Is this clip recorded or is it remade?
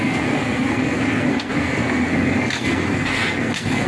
remade